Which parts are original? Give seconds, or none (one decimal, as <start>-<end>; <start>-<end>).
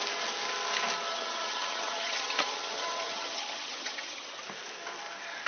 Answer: 0.0-1.1; 4.4-5.5